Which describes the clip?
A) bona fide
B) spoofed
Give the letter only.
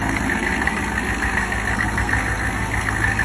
B